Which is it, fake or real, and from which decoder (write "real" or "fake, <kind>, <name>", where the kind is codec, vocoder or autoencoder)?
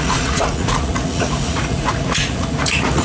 fake, vocoder, Vocos